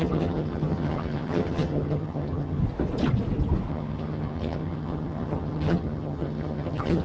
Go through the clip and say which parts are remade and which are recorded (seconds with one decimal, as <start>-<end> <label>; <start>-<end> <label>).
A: 0.0-2.6 remade; 2.6-3.7 recorded; 3.7-7.0 remade